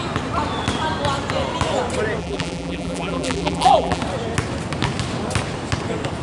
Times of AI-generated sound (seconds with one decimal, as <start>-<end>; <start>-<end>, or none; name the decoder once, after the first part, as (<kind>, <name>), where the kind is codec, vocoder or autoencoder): 2.2-4.0 (vocoder, BigVGAN v2)